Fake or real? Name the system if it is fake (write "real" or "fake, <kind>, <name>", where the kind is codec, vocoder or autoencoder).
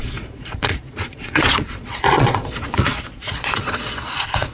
fake, vocoder, Vocos